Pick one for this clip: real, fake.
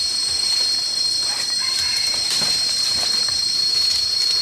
fake